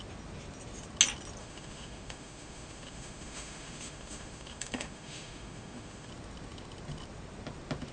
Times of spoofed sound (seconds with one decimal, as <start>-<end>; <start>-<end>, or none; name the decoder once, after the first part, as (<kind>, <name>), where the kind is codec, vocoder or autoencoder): 1.4-6.1 (autoencoder, DAC-VAE)